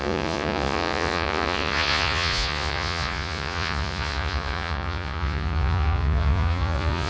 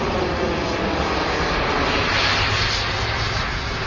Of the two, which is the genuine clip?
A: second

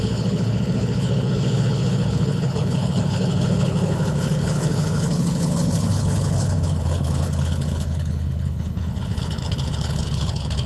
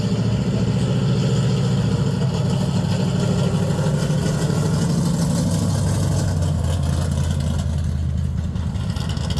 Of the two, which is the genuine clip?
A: second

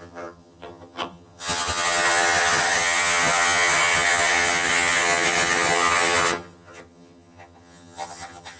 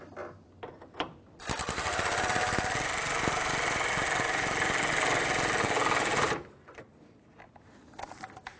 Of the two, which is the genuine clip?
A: second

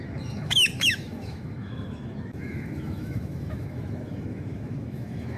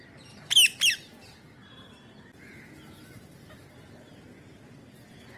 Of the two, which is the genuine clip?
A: second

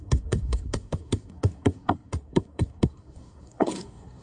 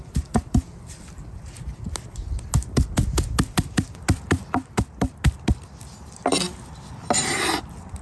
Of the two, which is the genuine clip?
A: second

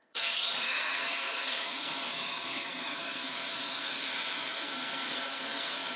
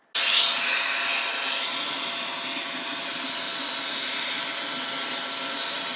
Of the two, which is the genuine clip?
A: second